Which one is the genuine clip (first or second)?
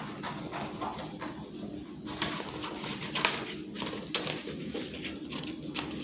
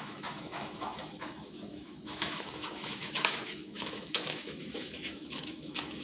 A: first